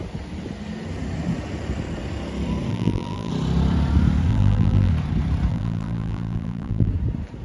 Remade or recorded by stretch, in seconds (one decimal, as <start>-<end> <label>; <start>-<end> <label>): 0.0-2.7 recorded; 2.7-3.3 remade; 3.3-4.3 recorded; 4.3-4.9 remade; 4.9-5.5 recorded; 5.5-6.9 remade; 6.9-7.4 recorded